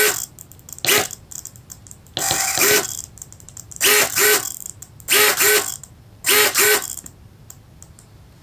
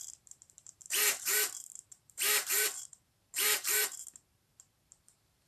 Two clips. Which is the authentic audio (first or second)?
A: first